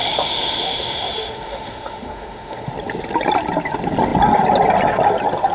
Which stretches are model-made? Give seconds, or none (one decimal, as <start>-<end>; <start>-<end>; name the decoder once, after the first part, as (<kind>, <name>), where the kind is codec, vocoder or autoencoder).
0.0-2.7 (autoencoder, DAC-VAE)